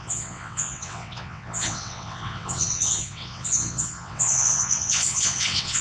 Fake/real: fake